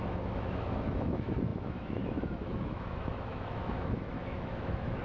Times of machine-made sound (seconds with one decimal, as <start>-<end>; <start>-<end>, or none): 0.0-5.0